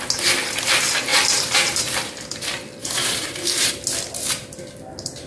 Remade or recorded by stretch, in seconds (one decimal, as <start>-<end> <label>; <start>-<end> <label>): 0.0-1.1 recorded; 1.1-1.8 remade; 1.8-2.8 recorded; 2.8-3.7 remade; 3.7-5.3 recorded